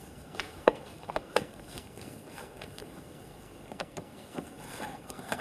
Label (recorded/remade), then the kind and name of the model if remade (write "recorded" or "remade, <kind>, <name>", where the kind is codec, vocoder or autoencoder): remade, codec, SNAC